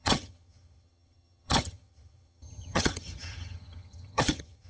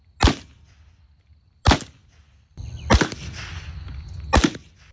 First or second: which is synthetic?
first